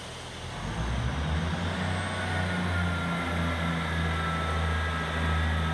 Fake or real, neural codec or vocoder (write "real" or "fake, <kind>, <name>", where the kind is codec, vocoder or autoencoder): real